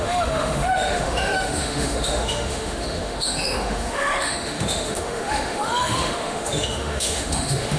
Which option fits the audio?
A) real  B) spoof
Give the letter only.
B